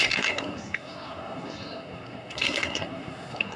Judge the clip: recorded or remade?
remade